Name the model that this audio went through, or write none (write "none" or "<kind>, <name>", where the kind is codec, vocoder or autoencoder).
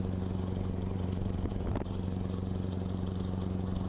vocoder, BigVGAN v2